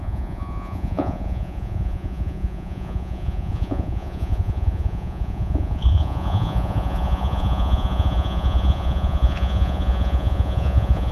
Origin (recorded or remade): remade